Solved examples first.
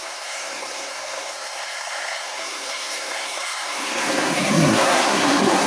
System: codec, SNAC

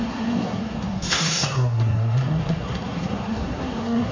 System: codec, SNAC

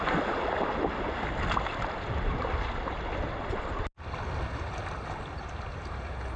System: none